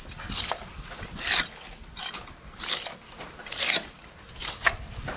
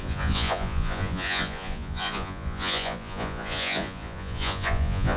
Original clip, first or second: first